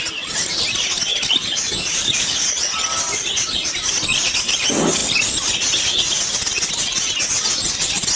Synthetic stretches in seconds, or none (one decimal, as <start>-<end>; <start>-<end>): 1.1-2.5